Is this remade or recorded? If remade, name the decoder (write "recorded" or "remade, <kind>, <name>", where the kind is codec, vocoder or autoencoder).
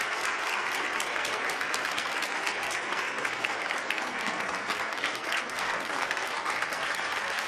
remade, codec, SNAC